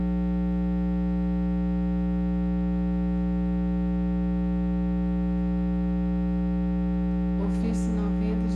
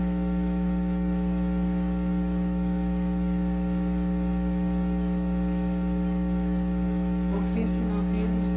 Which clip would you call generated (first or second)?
second